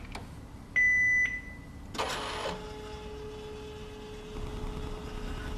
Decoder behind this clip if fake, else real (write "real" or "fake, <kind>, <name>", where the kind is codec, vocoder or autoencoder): real